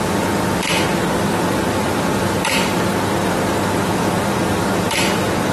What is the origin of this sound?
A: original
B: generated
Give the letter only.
A